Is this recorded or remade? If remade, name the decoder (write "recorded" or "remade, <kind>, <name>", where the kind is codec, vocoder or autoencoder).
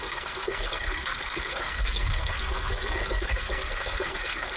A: remade, codec, SNAC